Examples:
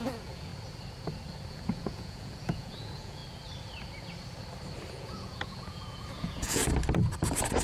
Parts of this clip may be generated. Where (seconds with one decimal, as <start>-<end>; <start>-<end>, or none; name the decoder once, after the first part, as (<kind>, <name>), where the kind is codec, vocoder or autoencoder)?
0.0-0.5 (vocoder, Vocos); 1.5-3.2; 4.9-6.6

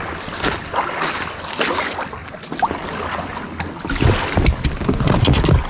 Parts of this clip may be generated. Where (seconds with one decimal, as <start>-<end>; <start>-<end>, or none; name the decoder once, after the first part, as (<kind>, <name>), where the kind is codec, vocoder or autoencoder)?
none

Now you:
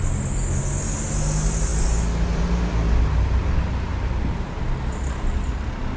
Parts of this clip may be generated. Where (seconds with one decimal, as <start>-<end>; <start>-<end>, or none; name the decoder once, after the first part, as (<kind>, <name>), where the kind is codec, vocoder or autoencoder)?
none

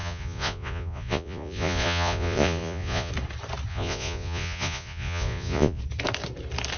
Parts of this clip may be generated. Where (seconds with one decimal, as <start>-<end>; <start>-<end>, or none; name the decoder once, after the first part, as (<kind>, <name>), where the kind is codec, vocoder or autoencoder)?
0.0-3.1 (vocoder, Vocos); 3.7-5.8

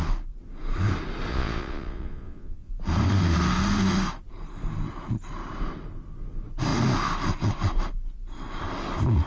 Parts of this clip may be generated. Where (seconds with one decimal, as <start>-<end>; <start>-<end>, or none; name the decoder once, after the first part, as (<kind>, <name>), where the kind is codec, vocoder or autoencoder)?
1.3-2.7 (vocoder, Vocos)

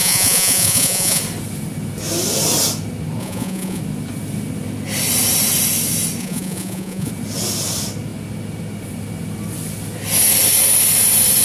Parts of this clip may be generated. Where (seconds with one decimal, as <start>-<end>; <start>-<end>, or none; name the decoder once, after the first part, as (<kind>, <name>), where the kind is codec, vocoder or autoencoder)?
0.0-1.2 (vocoder, Vocos); 3.2-3.8; 6.2-7.1

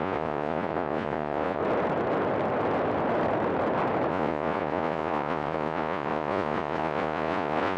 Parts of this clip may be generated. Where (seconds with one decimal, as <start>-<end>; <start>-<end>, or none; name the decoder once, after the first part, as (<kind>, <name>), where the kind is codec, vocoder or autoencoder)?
0.0-1.6 (vocoder, Vocos); 4.1-7.8

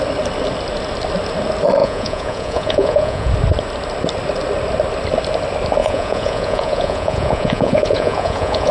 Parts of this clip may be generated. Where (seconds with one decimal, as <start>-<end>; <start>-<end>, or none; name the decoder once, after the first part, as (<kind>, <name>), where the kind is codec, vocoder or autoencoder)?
1.8-3.3 (vocoder, Vocos); 5.8-8.7